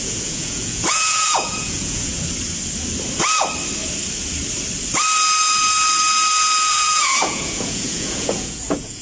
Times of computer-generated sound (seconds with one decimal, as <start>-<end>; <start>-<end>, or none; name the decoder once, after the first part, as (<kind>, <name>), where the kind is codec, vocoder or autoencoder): 0.0-2.1 (vocoder, Vocos); 6.7-9.0